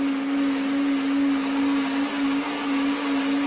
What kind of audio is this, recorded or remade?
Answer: recorded